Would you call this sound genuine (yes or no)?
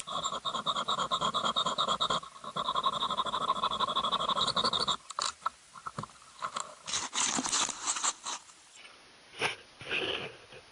yes